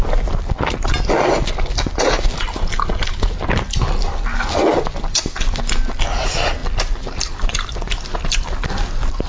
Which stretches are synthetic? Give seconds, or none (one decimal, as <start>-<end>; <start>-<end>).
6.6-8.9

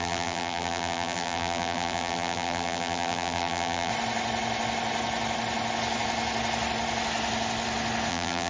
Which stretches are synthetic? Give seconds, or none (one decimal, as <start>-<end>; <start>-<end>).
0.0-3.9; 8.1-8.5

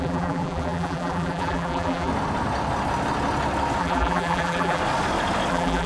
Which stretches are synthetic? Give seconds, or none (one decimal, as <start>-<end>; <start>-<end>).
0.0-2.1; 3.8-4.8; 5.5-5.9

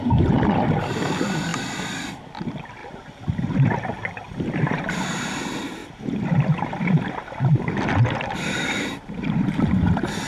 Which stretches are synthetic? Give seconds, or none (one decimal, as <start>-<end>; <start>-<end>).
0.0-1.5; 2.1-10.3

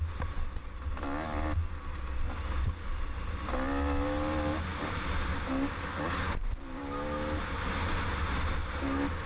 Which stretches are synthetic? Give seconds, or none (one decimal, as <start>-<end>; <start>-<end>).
none

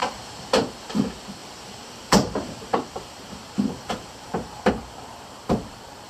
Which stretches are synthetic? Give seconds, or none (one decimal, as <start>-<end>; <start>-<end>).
0.0-0.5; 1.4-4.7

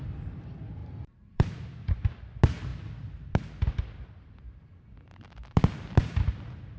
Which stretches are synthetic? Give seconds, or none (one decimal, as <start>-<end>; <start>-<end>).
0.8-1.5